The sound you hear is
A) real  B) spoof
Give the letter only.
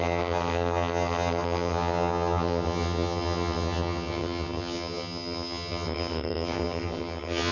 B